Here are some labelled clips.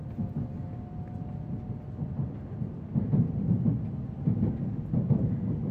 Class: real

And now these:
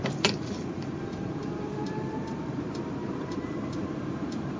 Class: fake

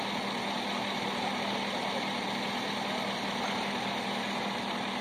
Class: real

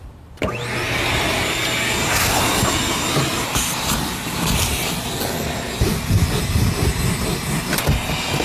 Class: real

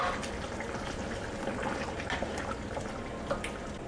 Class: real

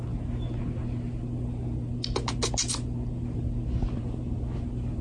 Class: real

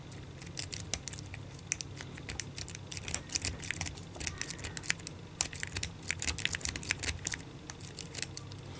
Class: real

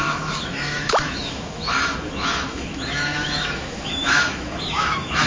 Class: fake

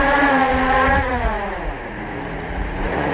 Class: fake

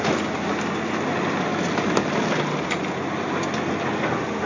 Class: real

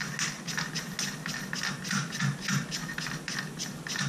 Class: real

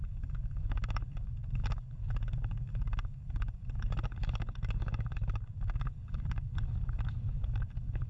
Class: fake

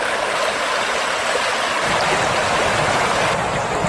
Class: real